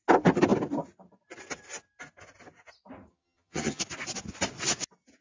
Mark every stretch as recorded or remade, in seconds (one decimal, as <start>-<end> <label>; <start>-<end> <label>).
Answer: 0.0-3.1 recorded; 3.1-3.8 remade; 3.8-5.2 recorded